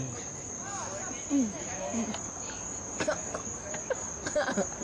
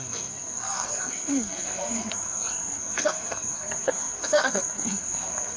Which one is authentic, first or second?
first